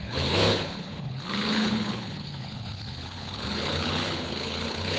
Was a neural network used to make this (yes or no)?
yes